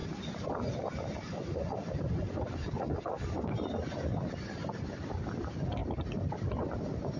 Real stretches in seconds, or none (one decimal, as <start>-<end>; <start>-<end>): 0.0-7.2